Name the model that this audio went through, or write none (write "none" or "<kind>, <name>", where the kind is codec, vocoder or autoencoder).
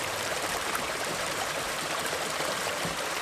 vocoder, BigVGAN v2